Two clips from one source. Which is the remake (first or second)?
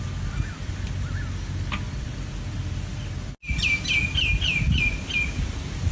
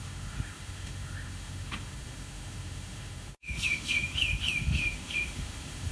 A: second